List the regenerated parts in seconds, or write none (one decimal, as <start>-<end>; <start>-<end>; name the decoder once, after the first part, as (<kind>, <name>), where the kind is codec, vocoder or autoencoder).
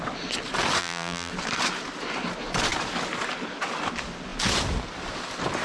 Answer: 0.8-1.3 (vocoder, BigVGAN v2)